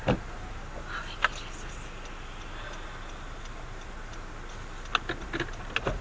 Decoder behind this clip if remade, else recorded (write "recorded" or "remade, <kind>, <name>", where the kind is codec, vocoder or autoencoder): recorded